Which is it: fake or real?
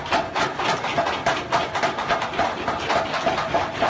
real